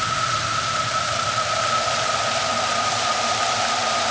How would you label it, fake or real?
real